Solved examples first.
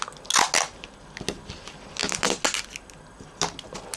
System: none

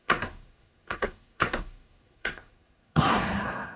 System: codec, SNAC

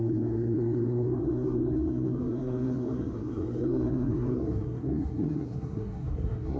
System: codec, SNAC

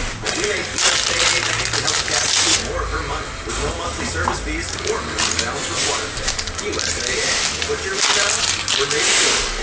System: none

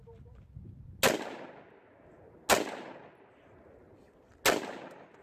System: none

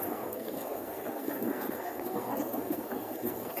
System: codec, SNAC